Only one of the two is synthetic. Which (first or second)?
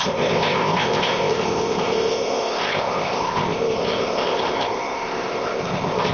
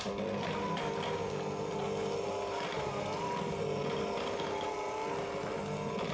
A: first